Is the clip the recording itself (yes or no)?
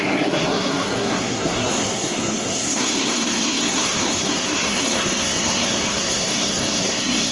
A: no